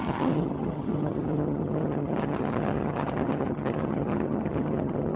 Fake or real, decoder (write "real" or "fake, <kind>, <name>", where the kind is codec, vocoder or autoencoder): fake, vocoder, HiFi-GAN